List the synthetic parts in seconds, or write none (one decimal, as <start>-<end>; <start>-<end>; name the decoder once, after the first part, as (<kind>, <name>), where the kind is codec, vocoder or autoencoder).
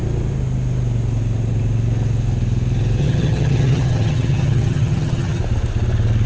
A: 3.0-5.4 (vocoder, HiFi-GAN)